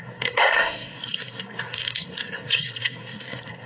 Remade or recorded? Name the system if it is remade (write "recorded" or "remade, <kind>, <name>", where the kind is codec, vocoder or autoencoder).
remade, codec, SNAC